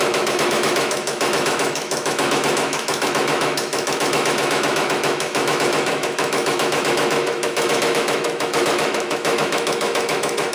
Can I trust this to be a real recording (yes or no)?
no